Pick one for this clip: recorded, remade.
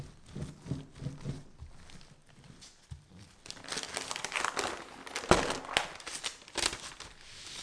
recorded